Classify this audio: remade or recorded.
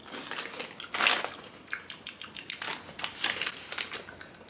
recorded